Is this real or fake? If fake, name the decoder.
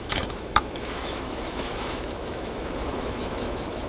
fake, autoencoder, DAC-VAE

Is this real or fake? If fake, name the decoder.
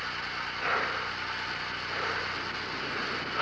real